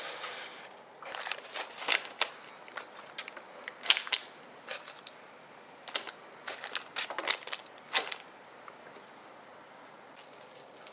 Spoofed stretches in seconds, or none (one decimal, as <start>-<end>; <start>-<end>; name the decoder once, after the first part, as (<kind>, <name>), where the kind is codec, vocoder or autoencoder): none